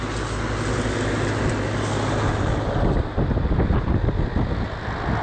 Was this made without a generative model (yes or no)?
yes